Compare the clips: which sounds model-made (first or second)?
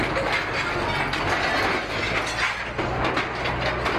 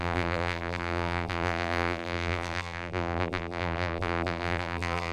second